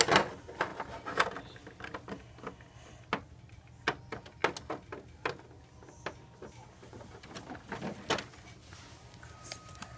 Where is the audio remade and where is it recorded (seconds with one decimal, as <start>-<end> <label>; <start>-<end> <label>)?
0.0-10.0 recorded